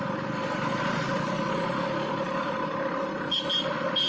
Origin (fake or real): real